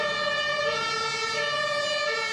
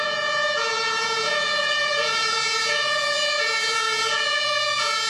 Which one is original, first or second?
first